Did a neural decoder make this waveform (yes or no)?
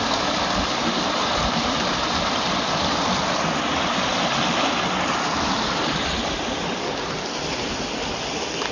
no